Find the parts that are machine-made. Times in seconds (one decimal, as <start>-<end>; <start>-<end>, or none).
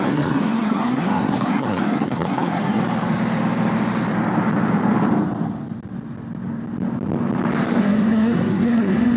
0.0-2.8; 7.8-9.2